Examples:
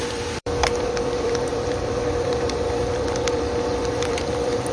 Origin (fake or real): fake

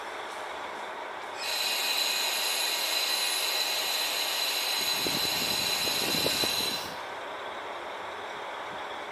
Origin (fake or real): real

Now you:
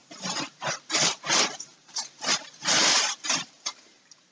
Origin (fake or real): fake